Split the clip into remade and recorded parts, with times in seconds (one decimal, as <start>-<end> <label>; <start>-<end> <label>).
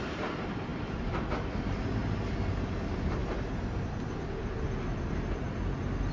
0.0-6.1 recorded